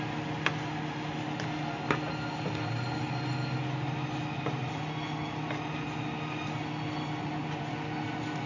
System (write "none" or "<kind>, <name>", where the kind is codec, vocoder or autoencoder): none